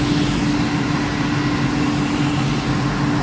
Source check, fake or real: real